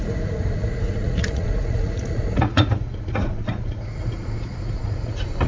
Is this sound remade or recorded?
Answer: remade